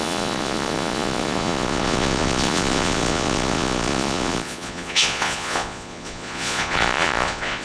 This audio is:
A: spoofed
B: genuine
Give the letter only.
A